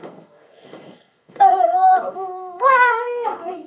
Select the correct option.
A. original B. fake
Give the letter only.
B